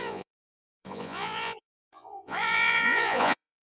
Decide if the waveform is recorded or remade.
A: remade